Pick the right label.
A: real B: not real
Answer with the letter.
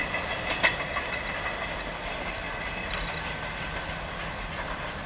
A